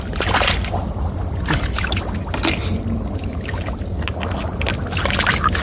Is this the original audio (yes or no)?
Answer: yes